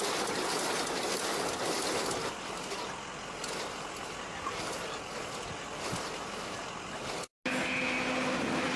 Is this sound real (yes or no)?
yes